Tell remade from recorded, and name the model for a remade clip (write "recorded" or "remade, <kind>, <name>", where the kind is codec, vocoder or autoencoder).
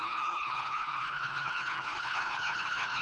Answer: remade, codec, HILCodec